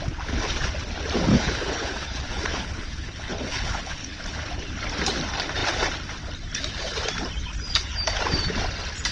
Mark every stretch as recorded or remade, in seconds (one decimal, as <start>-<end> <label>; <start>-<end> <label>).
0.0-1.3 recorded; 1.3-4.2 remade; 4.2-9.1 recorded